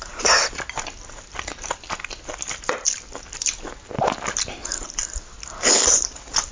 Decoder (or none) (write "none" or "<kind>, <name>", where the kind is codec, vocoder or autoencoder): none